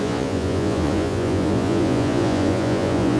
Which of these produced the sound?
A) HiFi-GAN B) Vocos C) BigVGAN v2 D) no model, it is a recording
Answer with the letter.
B